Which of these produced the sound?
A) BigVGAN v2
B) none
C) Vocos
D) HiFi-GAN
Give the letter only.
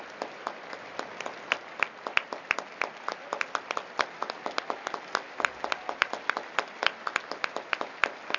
B